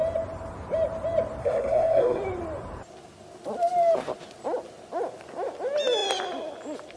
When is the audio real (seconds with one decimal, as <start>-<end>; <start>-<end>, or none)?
0.0-1.4; 2.2-7.0